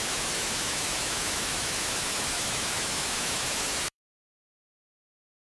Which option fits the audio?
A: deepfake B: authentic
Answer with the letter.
A